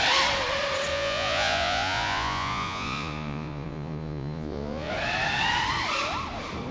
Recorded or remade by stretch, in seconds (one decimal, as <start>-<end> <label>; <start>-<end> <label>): 0.0-0.9 recorded; 0.9-4.9 remade; 4.9-6.7 recorded

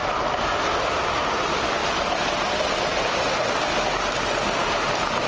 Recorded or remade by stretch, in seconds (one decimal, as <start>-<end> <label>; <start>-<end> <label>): 0.0-2.9 recorded; 2.9-3.4 remade; 3.4-5.3 recorded